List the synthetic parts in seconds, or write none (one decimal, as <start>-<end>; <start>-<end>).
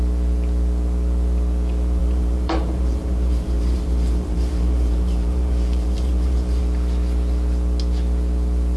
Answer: 2.0-6.6